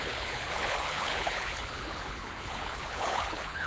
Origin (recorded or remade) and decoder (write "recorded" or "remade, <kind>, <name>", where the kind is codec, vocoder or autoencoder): remade, codec, HILCodec